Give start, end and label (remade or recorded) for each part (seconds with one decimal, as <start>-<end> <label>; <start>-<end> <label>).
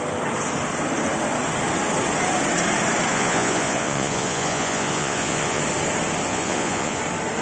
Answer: 0.0-3.1 recorded; 3.1-5.6 remade; 5.6-6.3 recorded; 6.3-7.0 remade; 7.0-7.4 recorded